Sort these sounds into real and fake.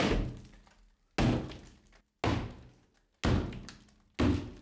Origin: real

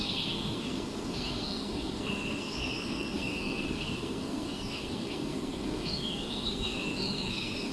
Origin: fake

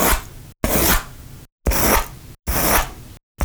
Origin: real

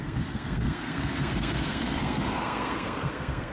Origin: fake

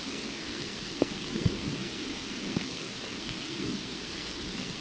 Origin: fake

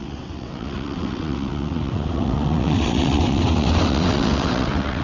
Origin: fake